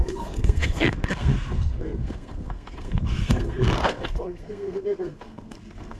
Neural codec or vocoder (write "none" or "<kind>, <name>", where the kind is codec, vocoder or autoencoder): codec, SNAC